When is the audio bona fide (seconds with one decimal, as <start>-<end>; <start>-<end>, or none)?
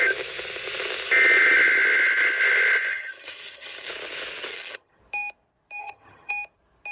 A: 0.0-2.9; 3.9-4.5; 5.0-5.8; 6.3-6.9